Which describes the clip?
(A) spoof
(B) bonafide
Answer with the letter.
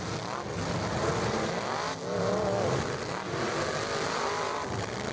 B